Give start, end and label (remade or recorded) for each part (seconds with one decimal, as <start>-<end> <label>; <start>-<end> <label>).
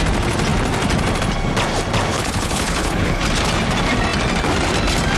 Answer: 0.0-2.1 recorded; 2.1-3.2 remade; 3.2-5.2 recorded